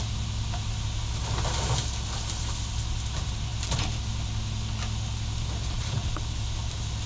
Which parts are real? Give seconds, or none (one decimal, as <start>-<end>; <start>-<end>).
0.0-5.6; 6.1-7.1

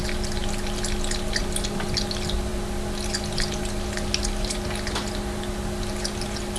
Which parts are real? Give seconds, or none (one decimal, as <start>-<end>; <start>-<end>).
0.0-6.6